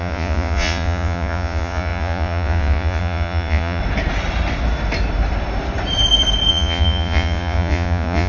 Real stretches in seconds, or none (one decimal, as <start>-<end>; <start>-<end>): 3.8-6.5